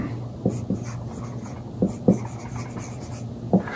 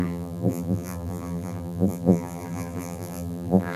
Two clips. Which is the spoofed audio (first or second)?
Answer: second